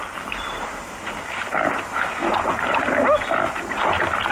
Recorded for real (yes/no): yes